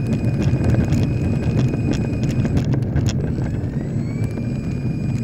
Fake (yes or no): no